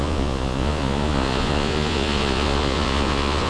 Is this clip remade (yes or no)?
yes